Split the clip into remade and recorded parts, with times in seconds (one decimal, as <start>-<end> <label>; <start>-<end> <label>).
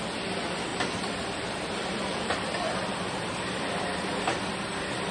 0.0-0.7 recorded; 0.7-3.8 remade; 3.8-5.1 recorded